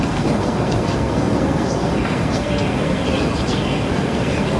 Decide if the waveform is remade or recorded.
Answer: remade